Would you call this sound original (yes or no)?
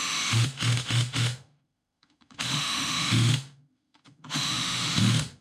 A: no